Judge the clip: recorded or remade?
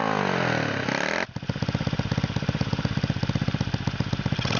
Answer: recorded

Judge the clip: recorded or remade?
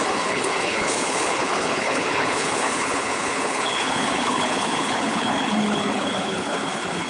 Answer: remade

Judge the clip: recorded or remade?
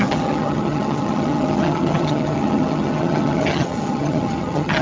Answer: remade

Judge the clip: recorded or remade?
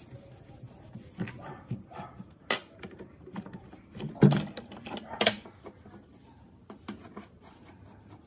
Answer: recorded